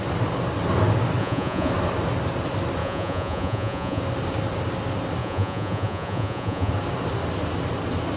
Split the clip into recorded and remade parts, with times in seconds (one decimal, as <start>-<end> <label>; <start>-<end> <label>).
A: 0.0-1.2 recorded; 1.2-1.7 remade; 1.7-2.8 recorded; 2.8-4.0 remade; 4.0-5.2 recorded; 5.2-6.7 remade; 6.7-8.2 recorded